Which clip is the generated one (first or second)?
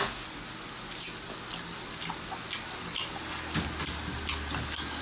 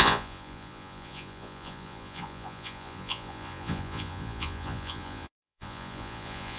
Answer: second